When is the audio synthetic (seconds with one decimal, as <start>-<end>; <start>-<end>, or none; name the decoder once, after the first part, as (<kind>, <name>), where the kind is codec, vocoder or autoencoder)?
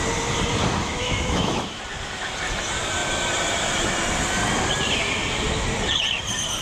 0.8-1.8 (autoencoder, DAC-VAE)